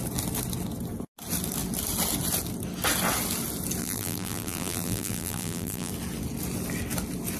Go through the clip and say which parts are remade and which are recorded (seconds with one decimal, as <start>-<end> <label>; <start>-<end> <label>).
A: 0.0-3.8 recorded; 3.8-5.9 remade; 5.9-7.4 recorded